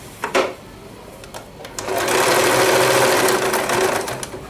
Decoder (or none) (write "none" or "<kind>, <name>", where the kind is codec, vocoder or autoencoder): none